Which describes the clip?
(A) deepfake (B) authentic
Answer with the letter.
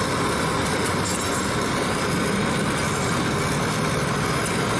B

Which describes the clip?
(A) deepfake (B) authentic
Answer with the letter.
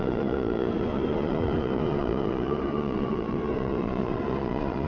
A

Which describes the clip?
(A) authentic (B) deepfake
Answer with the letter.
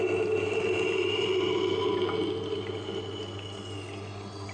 A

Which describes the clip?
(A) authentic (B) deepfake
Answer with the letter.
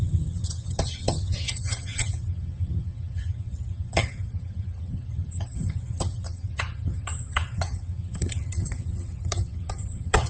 B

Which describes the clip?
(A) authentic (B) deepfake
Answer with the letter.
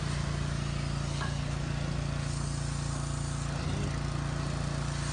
A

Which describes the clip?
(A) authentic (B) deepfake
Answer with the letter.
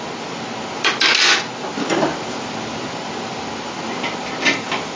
A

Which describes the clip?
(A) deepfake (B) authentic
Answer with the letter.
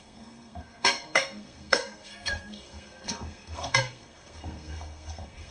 A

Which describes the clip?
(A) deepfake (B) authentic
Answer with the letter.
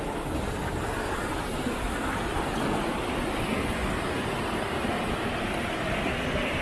B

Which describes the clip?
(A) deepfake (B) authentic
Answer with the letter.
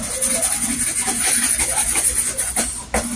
B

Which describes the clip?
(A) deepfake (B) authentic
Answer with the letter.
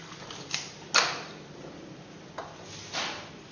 B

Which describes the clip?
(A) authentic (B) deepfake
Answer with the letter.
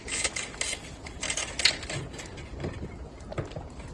A